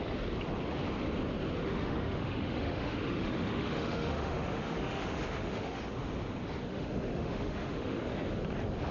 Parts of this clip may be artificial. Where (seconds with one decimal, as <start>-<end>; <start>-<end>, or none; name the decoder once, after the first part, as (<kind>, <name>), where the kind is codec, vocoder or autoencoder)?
1.6-5.8 (autoencoder, DAC-VAE); 6.7-8.1